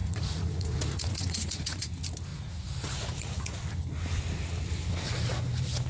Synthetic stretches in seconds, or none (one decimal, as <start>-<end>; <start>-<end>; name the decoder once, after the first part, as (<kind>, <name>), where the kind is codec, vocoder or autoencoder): 0.0-1.9 (vocoder, Vocos); 2.3-3.6